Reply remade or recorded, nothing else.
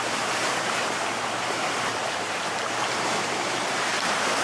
remade